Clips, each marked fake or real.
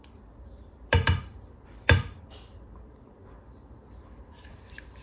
fake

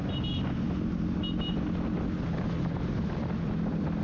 real